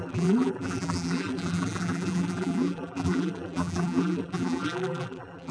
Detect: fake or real fake